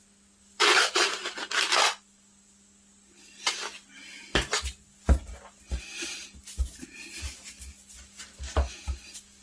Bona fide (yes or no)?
yes